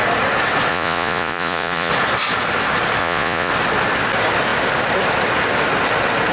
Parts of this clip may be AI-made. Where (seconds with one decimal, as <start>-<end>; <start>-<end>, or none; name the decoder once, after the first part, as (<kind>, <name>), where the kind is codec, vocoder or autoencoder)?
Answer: 0.7-1.9 (vocoder, Vocos); 3.0-3.5

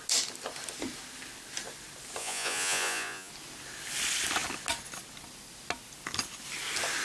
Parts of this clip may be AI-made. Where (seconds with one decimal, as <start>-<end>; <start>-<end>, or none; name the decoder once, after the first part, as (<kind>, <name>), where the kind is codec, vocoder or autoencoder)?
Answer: 2.2-3.3 (vocoder, Vocos)

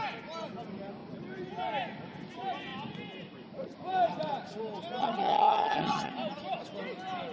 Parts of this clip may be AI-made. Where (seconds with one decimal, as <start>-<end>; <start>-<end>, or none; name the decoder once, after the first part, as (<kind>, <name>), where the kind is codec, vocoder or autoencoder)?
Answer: 5.0-6.1 (vocoder, HiFi-GAN)

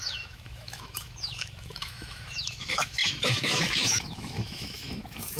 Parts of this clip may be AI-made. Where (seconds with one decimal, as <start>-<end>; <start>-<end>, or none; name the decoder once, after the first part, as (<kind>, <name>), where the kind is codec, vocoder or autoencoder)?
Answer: 0.0-5.4 (autoencoder, DAC-VAE)